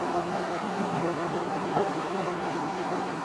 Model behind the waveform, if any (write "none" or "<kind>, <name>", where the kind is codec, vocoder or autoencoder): codec, SNAC